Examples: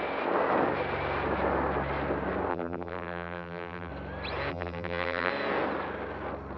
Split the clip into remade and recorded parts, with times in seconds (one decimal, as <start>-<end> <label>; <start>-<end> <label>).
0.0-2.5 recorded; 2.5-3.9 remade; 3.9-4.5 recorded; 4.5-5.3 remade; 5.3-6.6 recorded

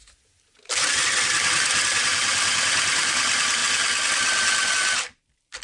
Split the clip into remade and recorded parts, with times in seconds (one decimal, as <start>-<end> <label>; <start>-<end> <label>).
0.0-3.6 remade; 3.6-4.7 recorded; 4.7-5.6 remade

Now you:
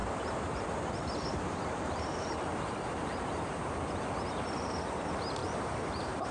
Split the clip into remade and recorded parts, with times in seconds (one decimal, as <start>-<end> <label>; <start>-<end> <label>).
0.0-3.8 remade; 3.8-5.4 recorded; 5.4-6.3 remade

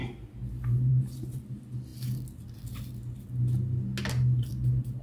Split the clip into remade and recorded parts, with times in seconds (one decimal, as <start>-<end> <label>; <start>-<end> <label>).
0.0-5.0 recorded